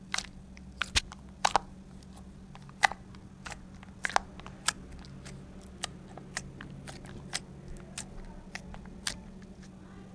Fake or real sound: real